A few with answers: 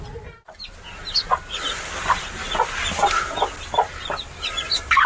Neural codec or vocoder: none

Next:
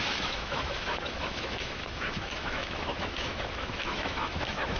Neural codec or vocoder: autoencoder, DAC-VAE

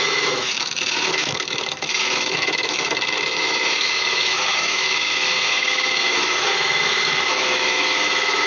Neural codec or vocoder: autoencoder, DAC-VAE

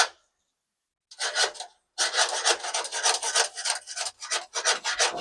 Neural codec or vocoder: none